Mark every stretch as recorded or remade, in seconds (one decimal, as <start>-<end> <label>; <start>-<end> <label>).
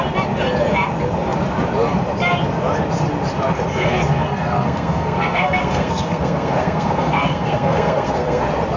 0.0-3.7 recorded; 3.7-8.4 remade; 8.4-8.8 recorded